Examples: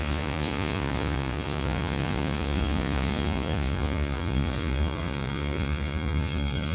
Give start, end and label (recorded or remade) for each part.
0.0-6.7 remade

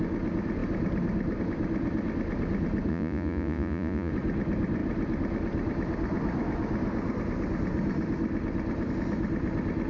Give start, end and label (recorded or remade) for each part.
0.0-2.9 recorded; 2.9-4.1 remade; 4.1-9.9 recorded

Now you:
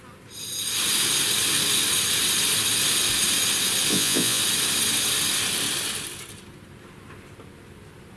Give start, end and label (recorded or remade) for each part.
0.0-3.9 recorded; 3.9-4.4 remade; 4.4-8.2 recorded

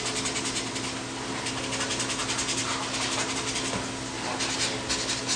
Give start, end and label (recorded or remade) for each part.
0.0-5.4 recorded

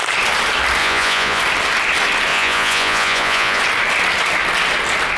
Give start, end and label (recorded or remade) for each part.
0.0-0.8 recorded; 0.8-1.4 remade; 1.4-2.3 recorded; 2.3-3.6 remade; 3.6-5.2 recorded

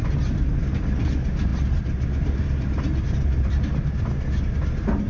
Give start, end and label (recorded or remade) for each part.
0.0-5.1 recorded

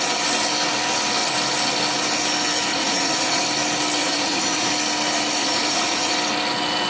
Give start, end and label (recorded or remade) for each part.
0.0-2.7 recorded; 2.7-3.4 remade; 3.4-4.0 recorded; 4.0-4.7 remade; 4.7-5.4 recorded; 5.4-6.1 remade; 6.1-6.9 recorded

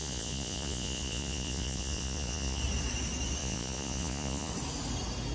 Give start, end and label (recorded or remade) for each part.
0.0-2.6 remade; 2.6-3.4 recorded; 3.4-4.5 remade; 4.5-5.3 recorded